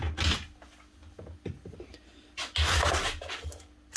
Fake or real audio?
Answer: real